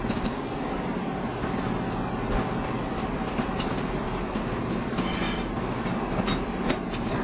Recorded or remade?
recorded